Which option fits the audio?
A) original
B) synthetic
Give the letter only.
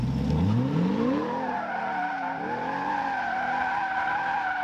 B